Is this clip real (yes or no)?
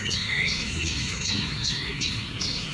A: no